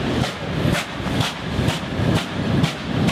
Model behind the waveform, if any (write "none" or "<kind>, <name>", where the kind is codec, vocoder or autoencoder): none